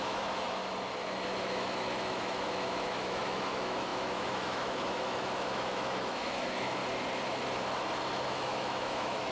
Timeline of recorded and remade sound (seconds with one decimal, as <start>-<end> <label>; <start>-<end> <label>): 0.0-0.6 remade; 0.6-1.4 recorded; 1.4-6.8 remade; 6.8-8.3 recorded; 8.3-9.3 remade